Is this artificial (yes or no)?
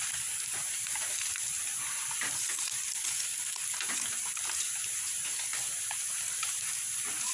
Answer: no